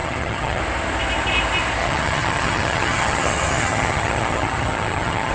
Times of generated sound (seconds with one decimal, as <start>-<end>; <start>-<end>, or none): 0.0-0.6; 1.8-5.3